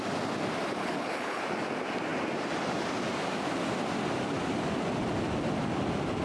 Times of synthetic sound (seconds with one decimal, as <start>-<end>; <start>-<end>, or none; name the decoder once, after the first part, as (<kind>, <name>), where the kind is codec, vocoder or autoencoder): 0.8-1.4 (codec, HILCodec)